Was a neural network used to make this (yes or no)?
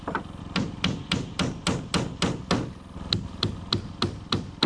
no